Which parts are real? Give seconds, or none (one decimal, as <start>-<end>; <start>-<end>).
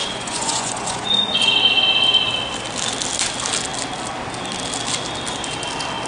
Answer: 1.5-6.1